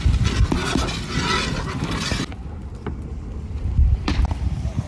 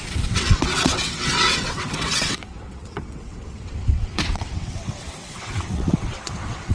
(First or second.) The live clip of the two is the first